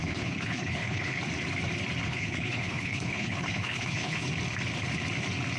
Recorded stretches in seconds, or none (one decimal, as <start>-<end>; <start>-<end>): 1.2-2.0; 4.3-5.6